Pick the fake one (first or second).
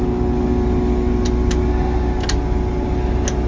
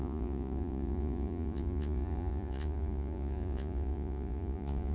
second